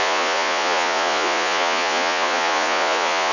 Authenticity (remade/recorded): remade